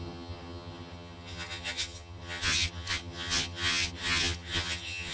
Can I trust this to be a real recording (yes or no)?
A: no